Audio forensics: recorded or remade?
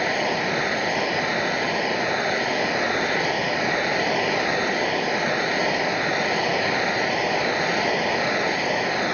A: recorded